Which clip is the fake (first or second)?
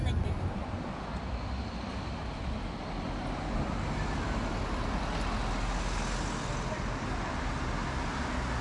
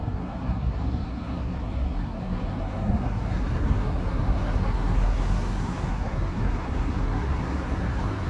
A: second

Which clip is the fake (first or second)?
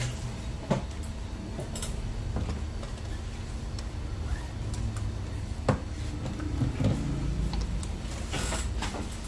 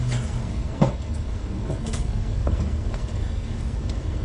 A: second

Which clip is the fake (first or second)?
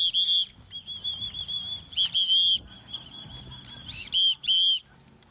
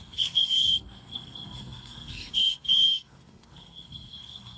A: second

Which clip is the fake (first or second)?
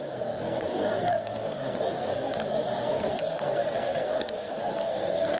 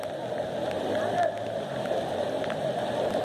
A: first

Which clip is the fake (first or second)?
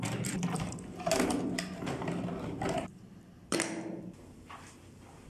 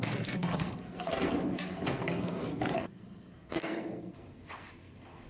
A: second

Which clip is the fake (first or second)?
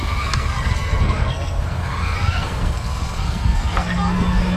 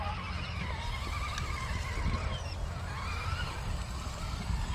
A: first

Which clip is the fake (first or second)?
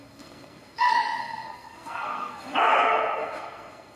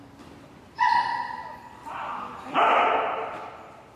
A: first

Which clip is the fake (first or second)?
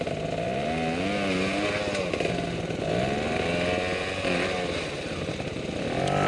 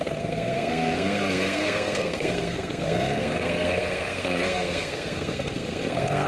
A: second